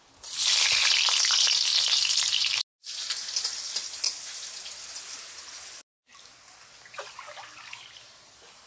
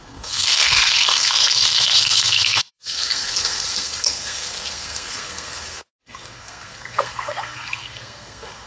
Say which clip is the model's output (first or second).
second